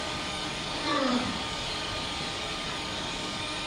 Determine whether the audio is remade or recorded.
remade